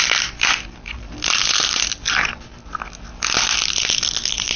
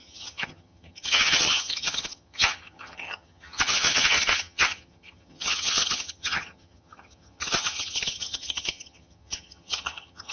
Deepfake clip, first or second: second